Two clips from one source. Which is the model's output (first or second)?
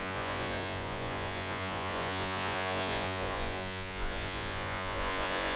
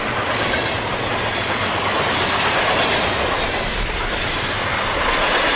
first